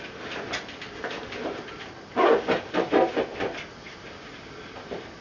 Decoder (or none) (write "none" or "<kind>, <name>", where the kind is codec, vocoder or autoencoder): none